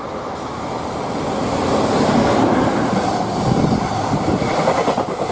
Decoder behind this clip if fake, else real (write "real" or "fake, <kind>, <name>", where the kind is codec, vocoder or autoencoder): real